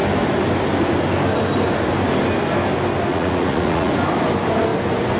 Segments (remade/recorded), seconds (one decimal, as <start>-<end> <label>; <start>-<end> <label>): 0.0-3.1 recorded; 3.1-3.9 remade; 3.9-5.2 recorded